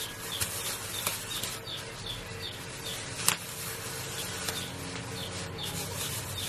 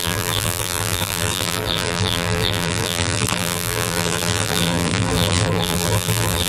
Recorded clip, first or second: first